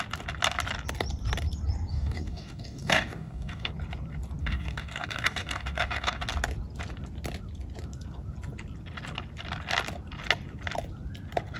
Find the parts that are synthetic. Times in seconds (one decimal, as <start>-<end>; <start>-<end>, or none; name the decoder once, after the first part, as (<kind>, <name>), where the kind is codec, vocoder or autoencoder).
1.9-3.7 (codec, DAC); 4.4-6.2

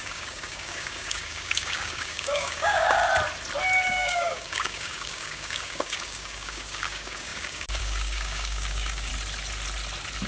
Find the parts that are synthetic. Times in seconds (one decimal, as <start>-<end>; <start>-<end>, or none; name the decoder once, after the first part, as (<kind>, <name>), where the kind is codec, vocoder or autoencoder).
0.0-3.0 (codec, DAC); 3.9-9.1

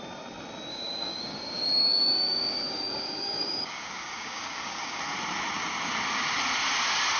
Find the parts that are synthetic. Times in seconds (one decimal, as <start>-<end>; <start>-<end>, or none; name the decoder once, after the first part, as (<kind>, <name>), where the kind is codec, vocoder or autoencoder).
0.7-5.0 (codec, DAC)

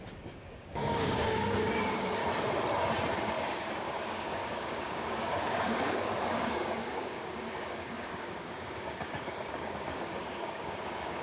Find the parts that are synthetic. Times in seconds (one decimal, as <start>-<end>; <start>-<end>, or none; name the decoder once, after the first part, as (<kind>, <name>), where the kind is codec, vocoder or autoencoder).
0.0-2.2 (codec, DAC); 3.2-11.2

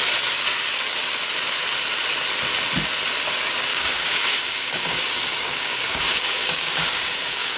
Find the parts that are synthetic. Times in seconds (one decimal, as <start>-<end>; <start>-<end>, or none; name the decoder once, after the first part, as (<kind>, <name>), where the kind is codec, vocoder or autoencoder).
3.7-7.6 (codec, DAC)

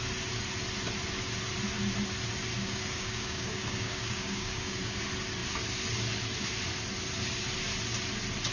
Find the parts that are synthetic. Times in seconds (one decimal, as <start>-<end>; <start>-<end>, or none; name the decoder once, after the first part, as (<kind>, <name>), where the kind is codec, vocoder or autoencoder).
2.6-5.0 (codec, DAC)